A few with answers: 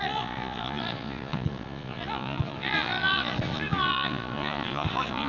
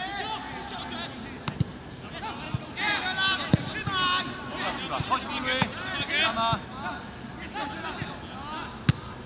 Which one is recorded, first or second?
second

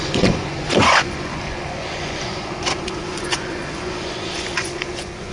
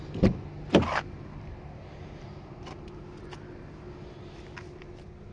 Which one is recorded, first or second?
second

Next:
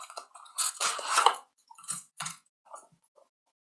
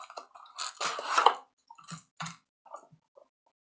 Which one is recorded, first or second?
second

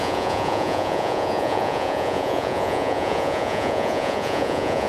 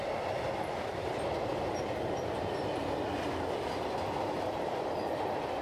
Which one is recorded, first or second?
second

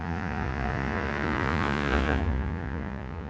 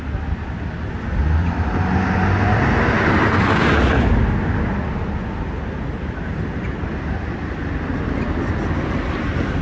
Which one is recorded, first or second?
second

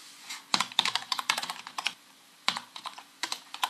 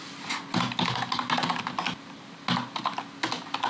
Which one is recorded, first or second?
second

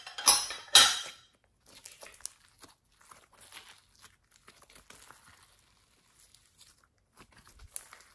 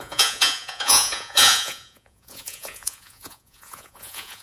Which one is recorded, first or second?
first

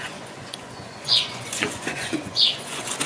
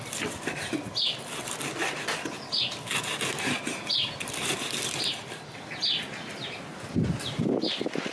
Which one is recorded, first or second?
second